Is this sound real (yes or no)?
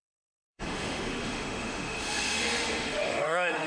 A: no